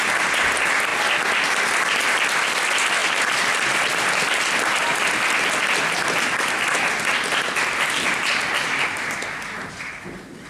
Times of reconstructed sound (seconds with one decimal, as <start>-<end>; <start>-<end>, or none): none

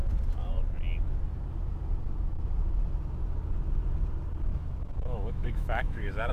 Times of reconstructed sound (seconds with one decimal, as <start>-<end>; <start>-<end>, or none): 4.5-6.3